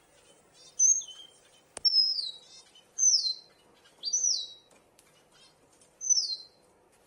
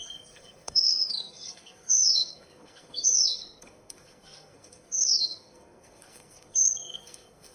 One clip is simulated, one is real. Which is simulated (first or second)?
second